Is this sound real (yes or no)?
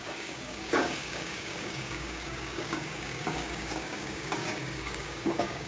no